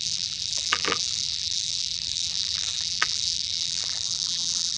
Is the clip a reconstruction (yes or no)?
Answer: yes